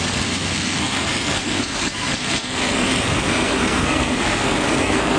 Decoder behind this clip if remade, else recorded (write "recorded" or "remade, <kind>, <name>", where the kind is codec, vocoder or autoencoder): remade, codec, SNAC